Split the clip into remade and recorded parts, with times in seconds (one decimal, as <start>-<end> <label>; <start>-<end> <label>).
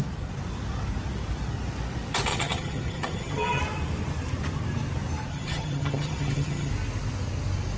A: 0.0-2.3 recorded; 2.3-3.6 remade; 3.6-5.3 recorded; 5.3-6.7 remade; 6.7-7.8 recorded